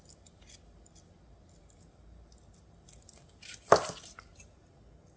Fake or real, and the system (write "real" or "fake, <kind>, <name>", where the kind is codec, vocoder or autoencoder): real